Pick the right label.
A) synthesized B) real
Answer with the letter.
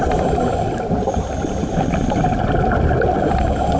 B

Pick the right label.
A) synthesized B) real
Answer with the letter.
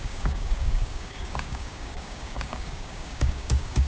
A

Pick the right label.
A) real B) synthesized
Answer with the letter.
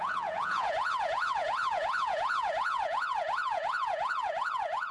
B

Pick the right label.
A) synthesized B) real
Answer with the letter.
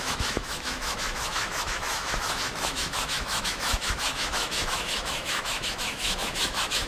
A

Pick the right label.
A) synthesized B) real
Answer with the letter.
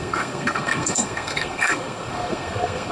A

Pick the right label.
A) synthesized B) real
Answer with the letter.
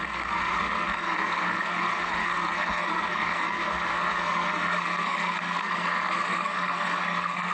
A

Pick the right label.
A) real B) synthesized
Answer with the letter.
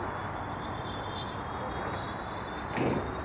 A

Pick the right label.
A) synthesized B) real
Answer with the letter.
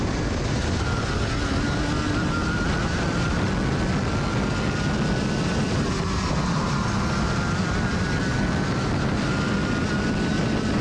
B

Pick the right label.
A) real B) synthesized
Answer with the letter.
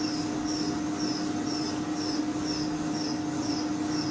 A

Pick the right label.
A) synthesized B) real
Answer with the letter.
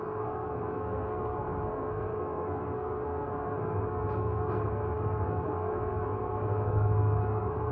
A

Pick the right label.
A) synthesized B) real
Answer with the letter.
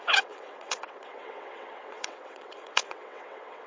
A